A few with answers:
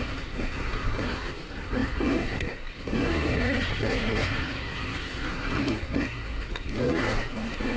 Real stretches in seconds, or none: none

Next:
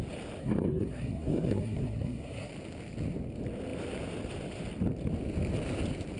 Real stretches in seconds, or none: 0.0-0.4; 2.5-6.2

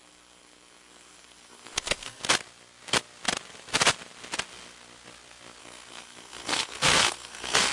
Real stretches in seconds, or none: 2.2-5.6

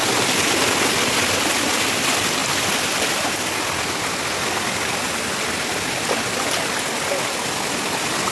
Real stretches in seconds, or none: 0.0-8.3

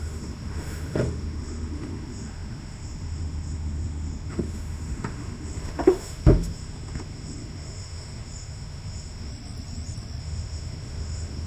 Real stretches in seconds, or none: 9.3-10.2

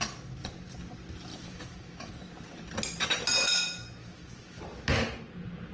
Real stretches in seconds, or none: 0.0-1.3; 2.1-4.0; 4.6-5.7

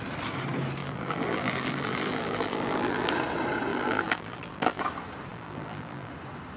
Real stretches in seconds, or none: 0.0-0.8; 3.1-3.7; 4.8-5.3; 6.1-6.6